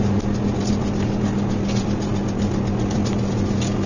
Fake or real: real